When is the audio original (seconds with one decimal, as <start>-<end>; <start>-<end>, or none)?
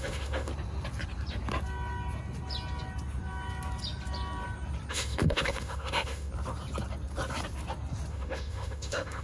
0.5-4.9; 6.3-8.1